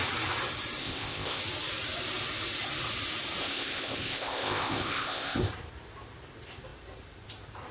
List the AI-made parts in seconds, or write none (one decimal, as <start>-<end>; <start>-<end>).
0.8-1.4; 3.4-5.5